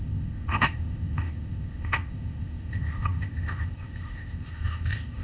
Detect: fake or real fake